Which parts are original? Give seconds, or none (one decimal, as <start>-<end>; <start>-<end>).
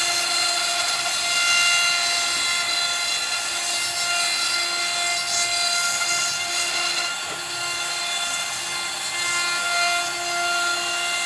0.0-11.3